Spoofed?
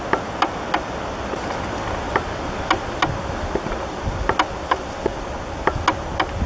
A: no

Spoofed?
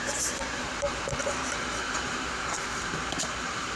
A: yes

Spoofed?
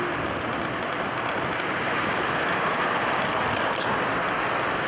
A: no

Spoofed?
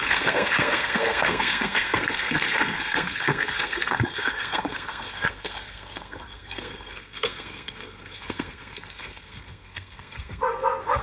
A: yes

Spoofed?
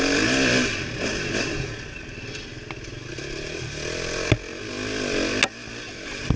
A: no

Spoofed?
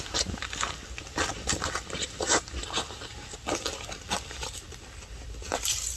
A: yes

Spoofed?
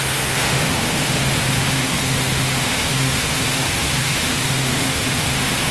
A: yes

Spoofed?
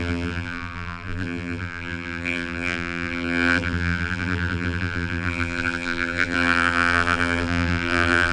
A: yes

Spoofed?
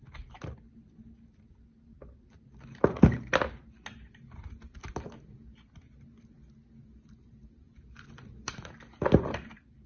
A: no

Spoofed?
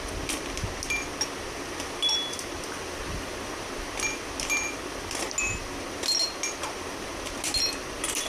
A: no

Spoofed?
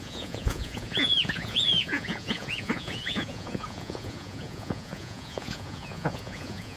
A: yes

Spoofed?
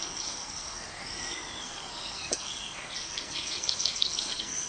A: yes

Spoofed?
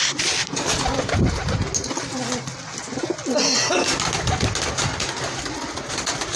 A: no